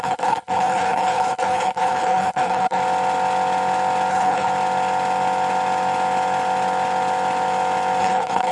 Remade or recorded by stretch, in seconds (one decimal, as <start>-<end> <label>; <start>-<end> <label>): 0.0-2.8 remade; 2.8-4.1 recorded; 4.1-4.5 remade; 4.5-8.0 recorded; 8.0-8.5 remade